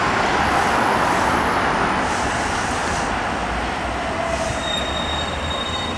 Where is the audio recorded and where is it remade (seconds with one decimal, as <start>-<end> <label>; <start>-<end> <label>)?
0.0-2.8 remade; 2.8-3.6 recorded; 3.6-6.0 remade